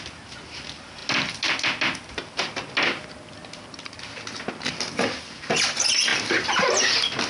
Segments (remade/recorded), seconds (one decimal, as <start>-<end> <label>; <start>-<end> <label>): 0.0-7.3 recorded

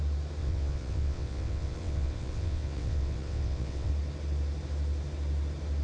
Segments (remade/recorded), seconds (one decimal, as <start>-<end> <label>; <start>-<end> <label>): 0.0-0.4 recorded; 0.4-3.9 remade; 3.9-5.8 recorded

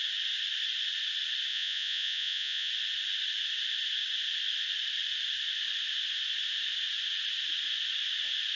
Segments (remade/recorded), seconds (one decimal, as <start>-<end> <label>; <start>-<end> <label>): 0.0-1.5 recorded; 1.5-2.7 remade; 2.7-8.6 recorded

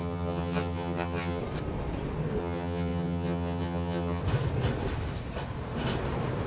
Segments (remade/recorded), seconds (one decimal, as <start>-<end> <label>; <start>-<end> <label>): 0.0-1.4 remade; 1.4-2.4 recorded; 2.4-4.2 remade; 4.2-6.5 recorded

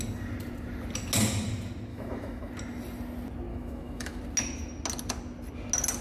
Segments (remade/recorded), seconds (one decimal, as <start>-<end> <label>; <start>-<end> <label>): 0.0-1.9 recorded; 1.9-2.5 remade; 2.5-3.5 recorded; 3.5-4.2 remade; 4.2-6.0 recorded

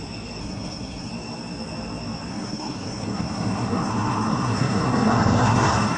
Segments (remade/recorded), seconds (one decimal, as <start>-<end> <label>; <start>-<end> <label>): 0.0-0.4 recorded; 0.4-1.1 remade; 1.1-2.3 recorded; 2.3-6.0 remade